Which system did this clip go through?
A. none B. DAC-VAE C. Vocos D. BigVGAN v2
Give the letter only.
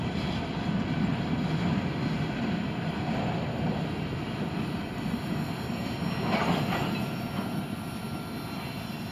A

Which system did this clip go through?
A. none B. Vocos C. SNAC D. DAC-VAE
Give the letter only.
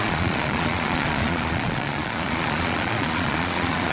B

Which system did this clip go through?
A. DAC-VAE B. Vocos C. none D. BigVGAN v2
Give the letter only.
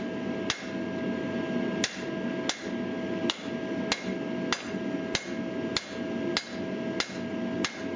C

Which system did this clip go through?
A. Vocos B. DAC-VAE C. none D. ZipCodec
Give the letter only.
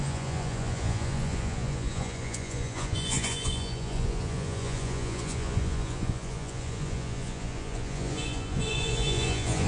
A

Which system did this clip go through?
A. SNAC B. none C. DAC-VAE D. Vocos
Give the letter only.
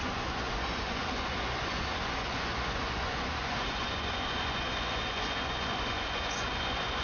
D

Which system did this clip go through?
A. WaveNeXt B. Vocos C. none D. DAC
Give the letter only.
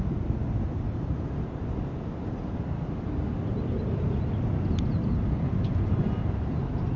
C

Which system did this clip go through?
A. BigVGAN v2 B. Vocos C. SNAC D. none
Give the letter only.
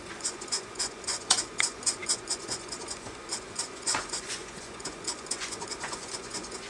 B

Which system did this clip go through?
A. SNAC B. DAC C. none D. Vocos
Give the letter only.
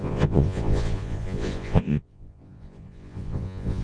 D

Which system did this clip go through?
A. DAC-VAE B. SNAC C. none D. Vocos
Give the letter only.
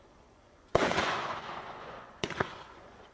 D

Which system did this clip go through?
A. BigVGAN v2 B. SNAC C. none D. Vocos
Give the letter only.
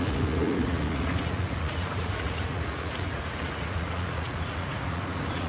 D